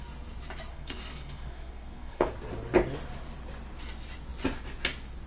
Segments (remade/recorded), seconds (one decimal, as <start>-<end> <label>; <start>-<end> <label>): 0.0-0.7 recorded; 0.7-2.3 remade; 2.3-5.3 recorded

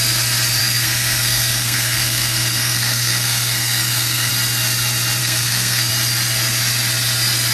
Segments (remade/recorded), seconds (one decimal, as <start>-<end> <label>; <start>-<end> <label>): 0.0-0.6 recorded; 0.6-4.3 remade; 4.3-5.2 recorded; 5.2-5.9 remade; 5.9-7.5 recorded